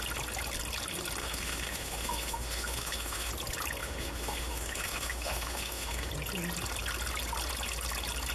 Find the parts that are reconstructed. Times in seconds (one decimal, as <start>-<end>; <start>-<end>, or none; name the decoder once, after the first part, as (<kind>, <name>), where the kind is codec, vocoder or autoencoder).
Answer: 1.2-3.3 (autoencoder, DAC-VAE); 3.8-6.1